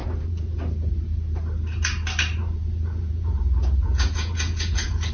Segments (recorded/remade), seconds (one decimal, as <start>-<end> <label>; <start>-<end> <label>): 0.0-0.5 remade; 0.5-2.4 recorded; 2.4-5.1 remade